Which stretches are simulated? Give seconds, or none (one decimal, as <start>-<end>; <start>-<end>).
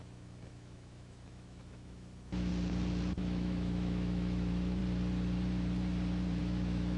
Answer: 0.0-2.5; 3.2-4.8; 6.4-7.0